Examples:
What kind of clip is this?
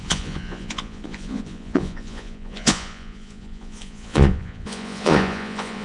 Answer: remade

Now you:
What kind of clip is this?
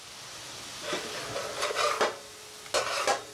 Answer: recorded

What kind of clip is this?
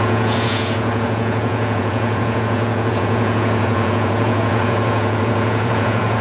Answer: remade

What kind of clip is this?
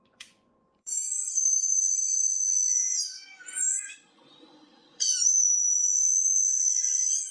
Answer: remade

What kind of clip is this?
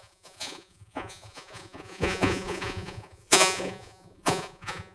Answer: remade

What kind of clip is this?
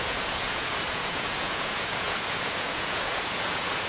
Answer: remade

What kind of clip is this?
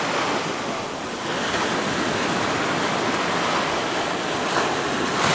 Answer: recorded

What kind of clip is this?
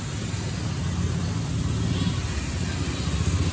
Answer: recorded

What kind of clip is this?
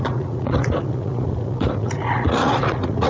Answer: remade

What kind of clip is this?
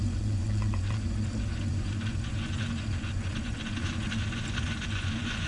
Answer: remade